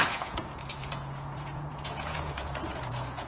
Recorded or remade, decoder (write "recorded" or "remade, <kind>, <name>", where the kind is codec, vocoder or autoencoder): remade, vocoder, Vocos